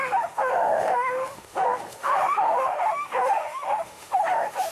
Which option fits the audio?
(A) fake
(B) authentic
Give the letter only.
A